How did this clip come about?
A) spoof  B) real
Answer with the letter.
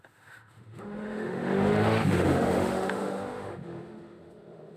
A